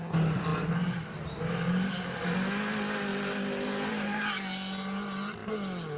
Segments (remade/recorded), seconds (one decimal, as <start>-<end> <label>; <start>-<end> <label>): 0.0-6.0 recorded